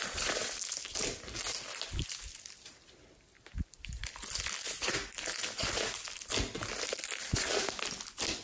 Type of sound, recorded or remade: recorded